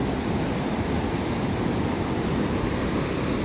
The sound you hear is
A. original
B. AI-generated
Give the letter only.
A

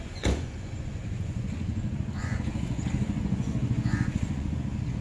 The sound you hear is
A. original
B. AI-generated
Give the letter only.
B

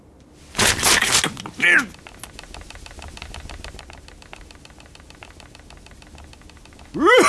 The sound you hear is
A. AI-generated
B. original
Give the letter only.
B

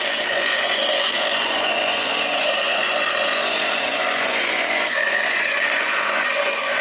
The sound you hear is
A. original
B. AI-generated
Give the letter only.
B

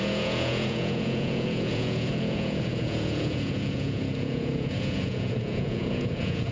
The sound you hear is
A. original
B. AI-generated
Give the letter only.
B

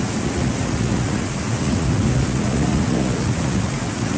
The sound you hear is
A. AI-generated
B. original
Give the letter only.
A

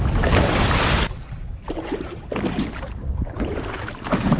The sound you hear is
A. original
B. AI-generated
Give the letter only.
B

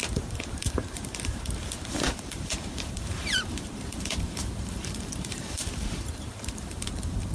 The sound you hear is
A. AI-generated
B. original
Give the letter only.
A